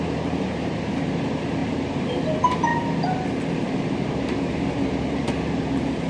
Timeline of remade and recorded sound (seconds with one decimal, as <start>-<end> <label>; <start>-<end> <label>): 0.0-2.7 remade; 2.7-3.5 recorded; 3.5-6.1 remade